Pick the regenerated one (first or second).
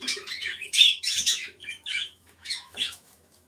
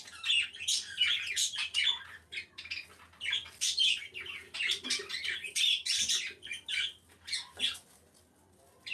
first